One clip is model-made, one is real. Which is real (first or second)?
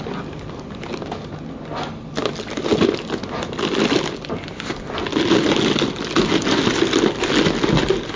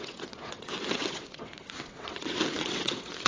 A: first